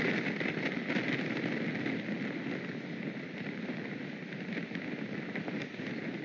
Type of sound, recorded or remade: recorded